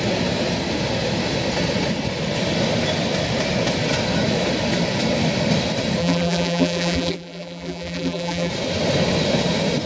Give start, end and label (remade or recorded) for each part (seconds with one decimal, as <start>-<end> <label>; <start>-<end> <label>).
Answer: 0.0-6.0 recorded; 6.0-8.5 remade; 8.5-9.9 recorded